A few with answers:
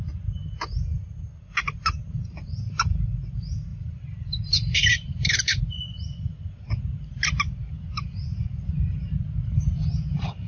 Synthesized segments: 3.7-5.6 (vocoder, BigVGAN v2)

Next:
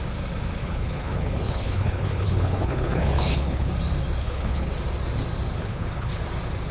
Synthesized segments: 0.6-3.7 (codec, HILCodec); 4.2-4.7; 5.6-6.2

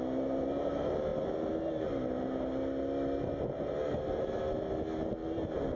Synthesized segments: none

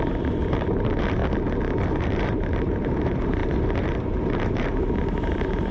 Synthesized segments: 0.0-1.2 (vocoder, BigVGAN v2); 1.9-5.7

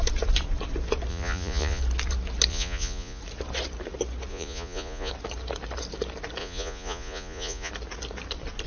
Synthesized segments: 1.1-1.8 (vocoder, Vocos); 2.5-3.2; 4.3-5.1; 6.4-7.7

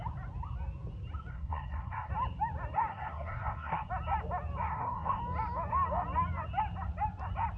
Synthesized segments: 1.3-2.1 (codec, SNAC); 2.9-3.9; 4.7-5.2

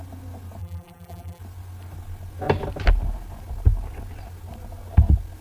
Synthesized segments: 0.6-1.4 (vocoder, BigVGAN v2)

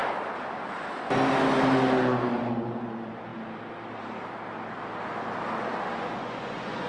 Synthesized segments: 6.0-6.9 (vocoder, Vocos)